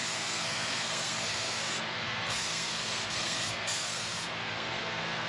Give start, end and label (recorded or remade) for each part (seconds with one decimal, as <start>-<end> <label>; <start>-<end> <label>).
0.0-5.3 remade